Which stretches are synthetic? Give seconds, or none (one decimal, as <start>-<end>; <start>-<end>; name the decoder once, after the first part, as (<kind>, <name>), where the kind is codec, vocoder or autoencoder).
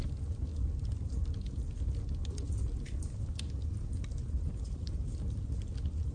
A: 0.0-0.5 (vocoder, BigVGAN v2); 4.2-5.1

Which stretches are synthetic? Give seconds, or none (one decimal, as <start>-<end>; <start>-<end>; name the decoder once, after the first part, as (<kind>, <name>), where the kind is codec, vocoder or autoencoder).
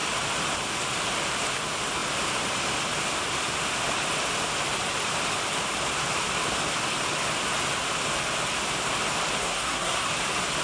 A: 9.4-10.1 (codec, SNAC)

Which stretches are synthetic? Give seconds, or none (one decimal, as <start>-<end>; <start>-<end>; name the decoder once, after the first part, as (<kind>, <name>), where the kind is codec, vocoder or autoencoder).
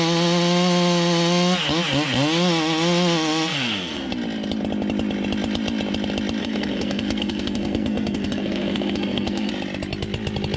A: 3.5-4.1 (codec, SNAC); 6.4-9.5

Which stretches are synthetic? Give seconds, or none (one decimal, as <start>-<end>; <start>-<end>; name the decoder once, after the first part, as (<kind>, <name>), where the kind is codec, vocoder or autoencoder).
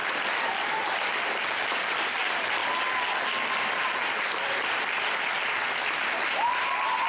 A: none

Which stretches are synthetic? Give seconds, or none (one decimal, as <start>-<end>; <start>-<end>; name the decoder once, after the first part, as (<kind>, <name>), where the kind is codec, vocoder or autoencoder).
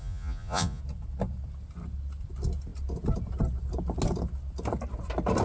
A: 0.0-0.8 (vocoder, Vocos)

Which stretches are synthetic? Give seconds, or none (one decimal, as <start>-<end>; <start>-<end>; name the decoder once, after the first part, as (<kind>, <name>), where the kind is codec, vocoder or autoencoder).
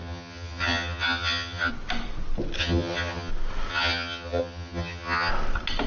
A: 0.0-1.7 (vocoder, HiFi-GAN); 2.6-3.3; 3.7-5.3